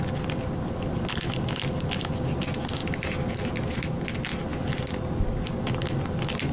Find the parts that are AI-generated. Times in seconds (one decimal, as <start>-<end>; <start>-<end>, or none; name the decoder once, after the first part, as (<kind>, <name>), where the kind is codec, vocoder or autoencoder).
none